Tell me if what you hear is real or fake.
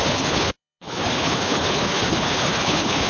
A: fake